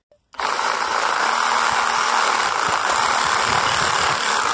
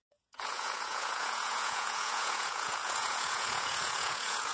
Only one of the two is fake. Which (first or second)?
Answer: second